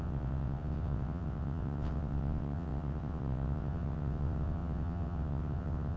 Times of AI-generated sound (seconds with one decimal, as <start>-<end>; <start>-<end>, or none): 0.0-6.0